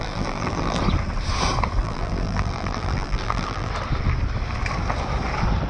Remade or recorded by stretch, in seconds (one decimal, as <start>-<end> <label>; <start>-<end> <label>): 0.0-0.8 remade; 0.8-1.8 recorded; 1.8-3.7 remade; 3.7-5.7 recorded